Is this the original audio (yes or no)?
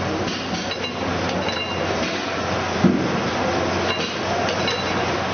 yes